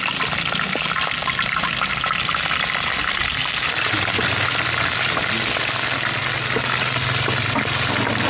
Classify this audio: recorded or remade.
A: recorded